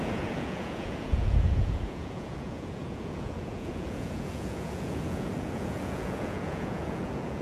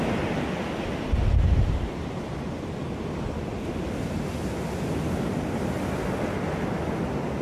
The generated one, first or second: first